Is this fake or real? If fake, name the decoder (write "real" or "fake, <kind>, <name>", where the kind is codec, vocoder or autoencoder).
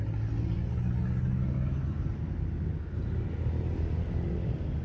real